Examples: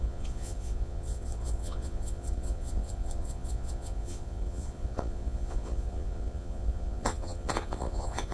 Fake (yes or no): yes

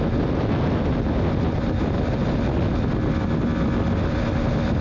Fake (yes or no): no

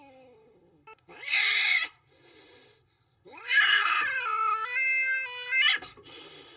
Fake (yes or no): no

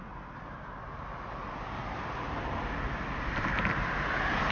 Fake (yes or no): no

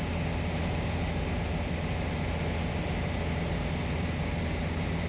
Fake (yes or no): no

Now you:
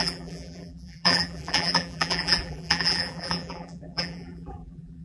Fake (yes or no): yes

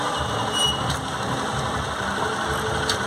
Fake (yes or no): no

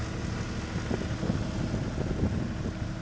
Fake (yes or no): no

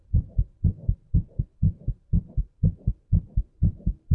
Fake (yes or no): yes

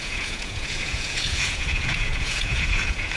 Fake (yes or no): yes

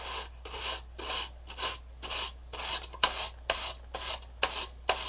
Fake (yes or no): no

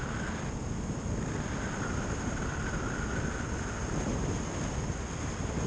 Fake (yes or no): no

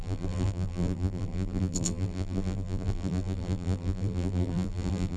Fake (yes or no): yes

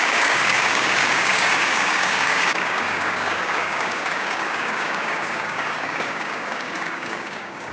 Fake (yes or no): yes